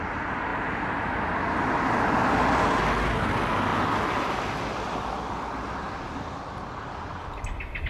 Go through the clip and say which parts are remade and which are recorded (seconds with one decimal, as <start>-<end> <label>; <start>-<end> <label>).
0.0-0.5 recorded; 0.5-2.8 remade; 2.8-3.7 recorded; 3.7-7.4 remade; 7.4-7.9 recorded